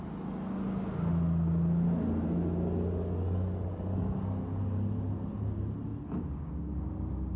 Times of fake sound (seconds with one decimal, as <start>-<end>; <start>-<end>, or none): none